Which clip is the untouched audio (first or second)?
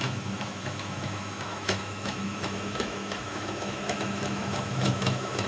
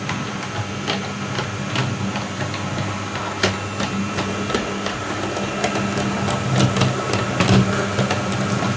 second